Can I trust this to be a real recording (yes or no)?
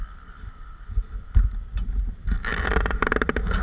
yes